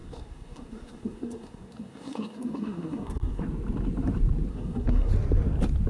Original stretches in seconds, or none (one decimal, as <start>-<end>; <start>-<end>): 3.4-4.5; 5.1-5.9